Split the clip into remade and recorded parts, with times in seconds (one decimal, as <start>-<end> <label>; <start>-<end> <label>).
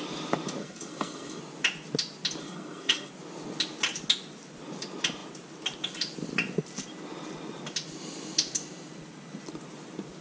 0.0-0.6 recorded; 0.6-1.4 remade; 1.4-2.4 recorded; 2.4-3.1 remade; 3.1-10.2 recorded